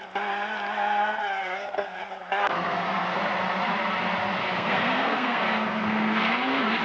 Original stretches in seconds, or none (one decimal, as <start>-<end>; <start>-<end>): 0.0-1.4; 2.0-2.4; 3.2-4.4